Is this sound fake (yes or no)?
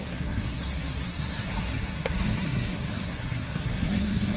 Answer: yes